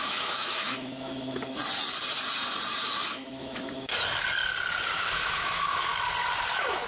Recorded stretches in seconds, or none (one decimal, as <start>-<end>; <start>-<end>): 1.6-3.1; 3.9-4.9; 5.9-6.5